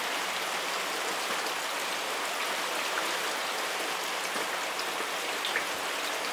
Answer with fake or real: real